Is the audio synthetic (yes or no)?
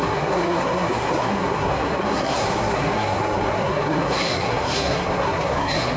yes